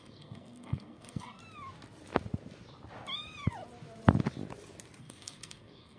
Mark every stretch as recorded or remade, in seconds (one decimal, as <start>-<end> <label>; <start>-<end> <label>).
0.0-1.4 remade; 1.4-5.0 recorded; 5.0-6.0 remade